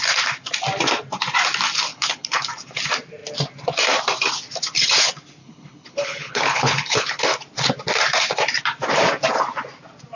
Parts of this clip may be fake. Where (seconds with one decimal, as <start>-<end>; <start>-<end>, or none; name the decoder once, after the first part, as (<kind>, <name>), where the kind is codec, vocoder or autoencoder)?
1.9-2.5 (codec, HILCodec); 5.4-7.2

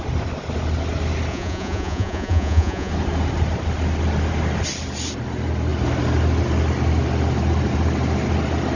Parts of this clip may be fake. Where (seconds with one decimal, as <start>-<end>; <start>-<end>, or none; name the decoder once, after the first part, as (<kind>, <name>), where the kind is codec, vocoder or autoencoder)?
1.3-2.9 (vocoder, Vocos)